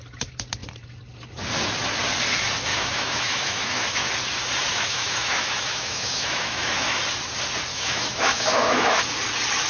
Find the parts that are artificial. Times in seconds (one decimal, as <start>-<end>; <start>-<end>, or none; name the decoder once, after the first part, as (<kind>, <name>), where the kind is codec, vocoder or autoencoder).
2.7-4.1 (autoencoder, DAC-VAE); 4.7-7.0; 7.7-9.0